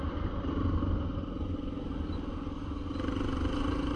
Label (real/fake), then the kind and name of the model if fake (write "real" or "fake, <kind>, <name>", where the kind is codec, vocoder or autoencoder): real